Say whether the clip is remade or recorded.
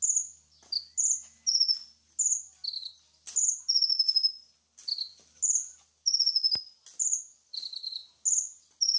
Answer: recorded